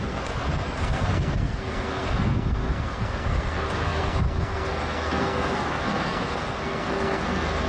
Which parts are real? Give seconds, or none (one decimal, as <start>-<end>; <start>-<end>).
none